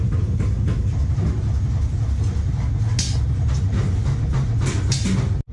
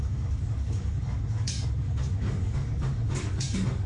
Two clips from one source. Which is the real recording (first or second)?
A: first